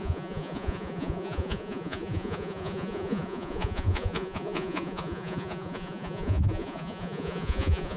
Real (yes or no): no